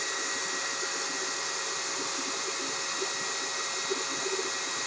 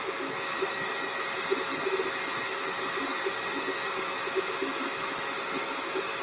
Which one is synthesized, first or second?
second